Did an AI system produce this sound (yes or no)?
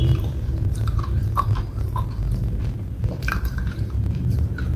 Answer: yes